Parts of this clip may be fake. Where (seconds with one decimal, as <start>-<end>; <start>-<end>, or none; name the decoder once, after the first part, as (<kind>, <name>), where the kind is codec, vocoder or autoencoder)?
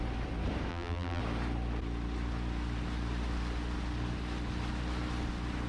0.7-1.2 (vocoder, BigVGAN v2)